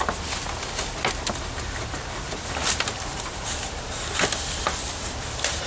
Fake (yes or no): no